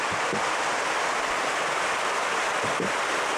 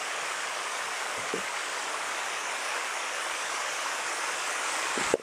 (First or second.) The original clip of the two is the first